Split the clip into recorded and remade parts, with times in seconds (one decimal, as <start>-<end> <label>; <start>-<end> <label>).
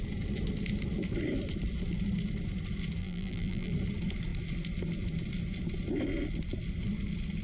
0.0-3.0 recorded; 3.0-3.7 remade; 3.7-7.4 recorded